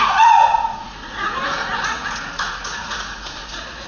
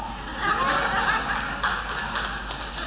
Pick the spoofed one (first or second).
first